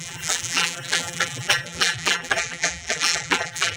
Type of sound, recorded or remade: remade